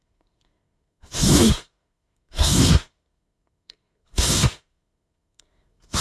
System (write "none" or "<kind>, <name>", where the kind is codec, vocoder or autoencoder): codec, SNAC